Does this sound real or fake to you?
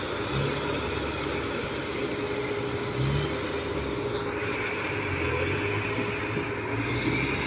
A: real